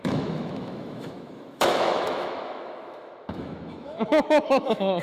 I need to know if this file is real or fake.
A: fake